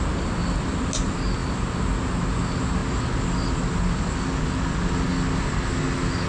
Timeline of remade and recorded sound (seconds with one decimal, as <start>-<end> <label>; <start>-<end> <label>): 0.0-6.3 recorded